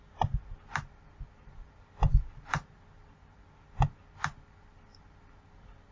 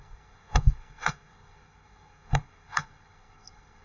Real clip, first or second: first